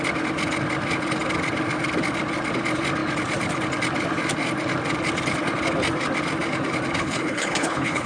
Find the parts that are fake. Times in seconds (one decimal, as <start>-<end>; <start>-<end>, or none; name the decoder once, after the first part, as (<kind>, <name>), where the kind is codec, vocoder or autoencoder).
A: 7.0-8.1 (codec, HILCodec)